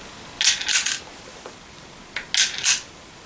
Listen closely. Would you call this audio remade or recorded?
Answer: recorded